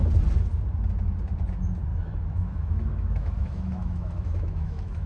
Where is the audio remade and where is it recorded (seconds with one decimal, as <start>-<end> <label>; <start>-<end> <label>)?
0.0-1.9 recorded; 1.9-5.1 remade